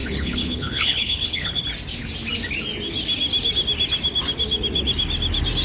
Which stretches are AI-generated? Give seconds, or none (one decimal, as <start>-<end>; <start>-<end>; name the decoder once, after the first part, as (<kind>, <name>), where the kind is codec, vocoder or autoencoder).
0.0-1.6 (codec, HILCodec)